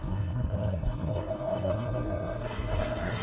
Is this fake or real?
fake